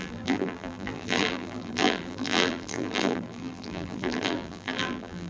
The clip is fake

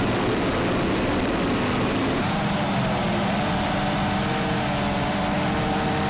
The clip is real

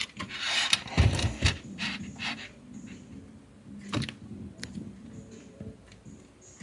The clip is fake